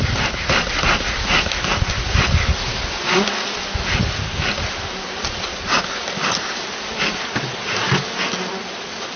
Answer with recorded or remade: recorded